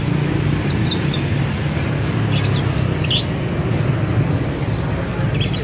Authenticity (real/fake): real